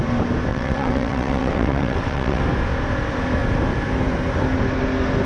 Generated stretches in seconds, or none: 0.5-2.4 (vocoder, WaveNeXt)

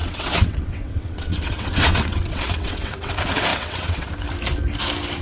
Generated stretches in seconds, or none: 0.0-3.1 (vocoder, WaveNeXt); 3.5-4.1